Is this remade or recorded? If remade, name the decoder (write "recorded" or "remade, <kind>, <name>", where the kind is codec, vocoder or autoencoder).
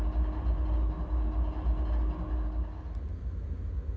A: recorded